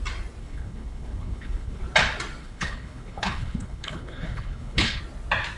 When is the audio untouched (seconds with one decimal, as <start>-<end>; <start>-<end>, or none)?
0.0-0.4; 1.8-2.4; 5.0-5.6